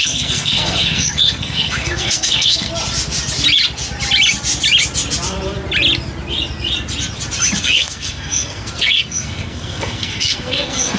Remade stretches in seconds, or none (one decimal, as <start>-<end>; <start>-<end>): 0.0-2.7; 7.6-11.0